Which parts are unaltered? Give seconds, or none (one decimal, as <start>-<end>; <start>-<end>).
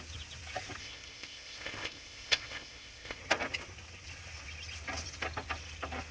0.0-0.8; 3.2-6.1